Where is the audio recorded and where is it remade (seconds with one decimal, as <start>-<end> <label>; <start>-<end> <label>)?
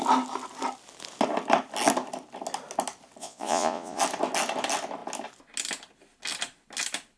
0.0-3.2 recorded; 3.2-4.0 remade; 4.0-7.2 recorded